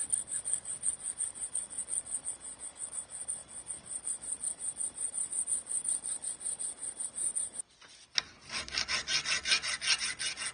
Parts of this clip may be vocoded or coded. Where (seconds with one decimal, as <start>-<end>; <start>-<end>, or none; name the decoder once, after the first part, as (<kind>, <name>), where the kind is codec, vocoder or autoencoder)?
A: none